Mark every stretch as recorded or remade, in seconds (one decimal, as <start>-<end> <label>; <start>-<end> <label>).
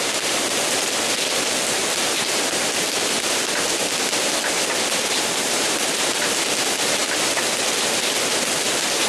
0.0-9.1 recorded